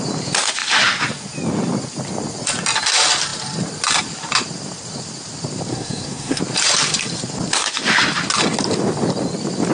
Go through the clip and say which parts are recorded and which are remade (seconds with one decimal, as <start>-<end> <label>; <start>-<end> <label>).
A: 0.0-5.7 recorded; 5.7-6.4 remade; 6.4-9.7 recorded